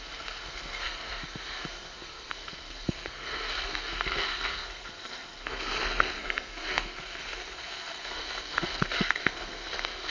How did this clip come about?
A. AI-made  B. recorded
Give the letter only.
A